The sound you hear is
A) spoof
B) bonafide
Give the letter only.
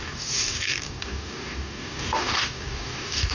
A